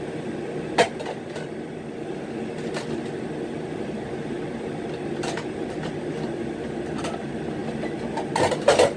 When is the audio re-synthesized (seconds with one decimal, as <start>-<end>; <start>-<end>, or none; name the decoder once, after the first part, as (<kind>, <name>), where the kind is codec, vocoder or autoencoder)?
none